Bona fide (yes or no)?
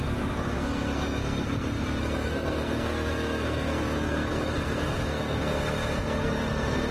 no